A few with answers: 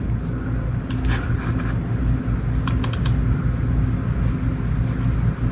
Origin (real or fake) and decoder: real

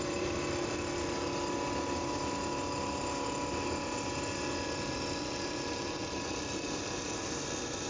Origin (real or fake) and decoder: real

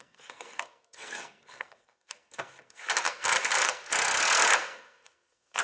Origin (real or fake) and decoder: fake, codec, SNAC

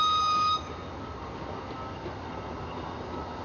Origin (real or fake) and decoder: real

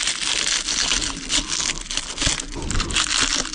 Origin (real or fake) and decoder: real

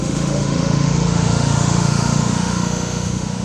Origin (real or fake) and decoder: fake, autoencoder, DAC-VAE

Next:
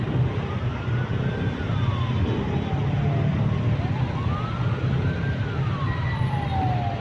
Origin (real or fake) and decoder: real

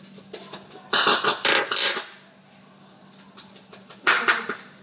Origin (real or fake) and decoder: real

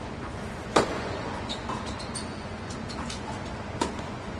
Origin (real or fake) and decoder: fake, vocoder, Vocos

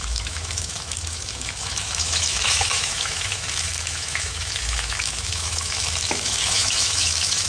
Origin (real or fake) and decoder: fake, autoencoder, DAC-VAE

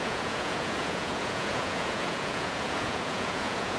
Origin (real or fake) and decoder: fake, vocoder, Vocos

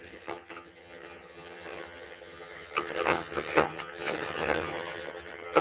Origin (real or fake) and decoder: fake, vocoder, HiFi-GAN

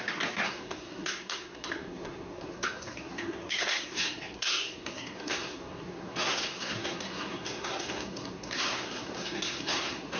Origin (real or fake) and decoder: fake, codec, SNAC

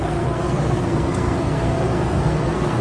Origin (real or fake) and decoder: fake, codec, SNAC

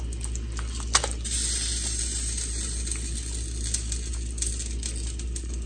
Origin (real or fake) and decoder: real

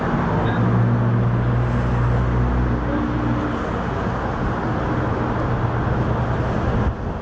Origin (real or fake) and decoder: real